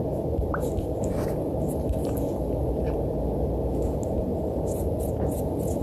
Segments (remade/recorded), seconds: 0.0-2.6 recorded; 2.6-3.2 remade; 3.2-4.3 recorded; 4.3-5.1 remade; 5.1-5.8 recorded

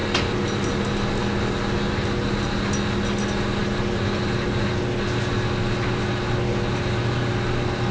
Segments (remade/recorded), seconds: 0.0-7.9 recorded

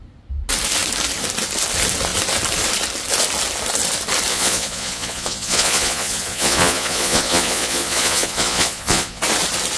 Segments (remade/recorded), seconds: 0.0-4.3 recorded; 4.3-9.2 remade; 9.2-9.8 recorded